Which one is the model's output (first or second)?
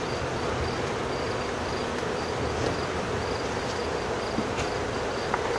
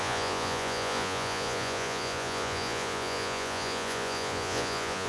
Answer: second